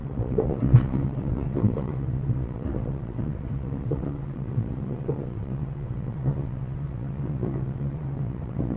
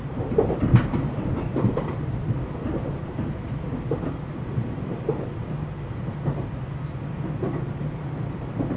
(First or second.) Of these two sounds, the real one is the second